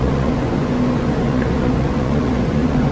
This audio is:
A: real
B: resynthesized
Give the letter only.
B